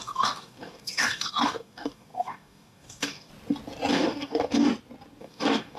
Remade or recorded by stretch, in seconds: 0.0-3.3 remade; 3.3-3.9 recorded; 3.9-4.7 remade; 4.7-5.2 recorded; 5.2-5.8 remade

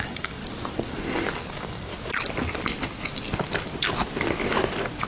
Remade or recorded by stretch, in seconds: 0.0-0.4 remade; 0.4-1.5 recorded; 1.5-1.9 remade; 1.9-5.1 recorded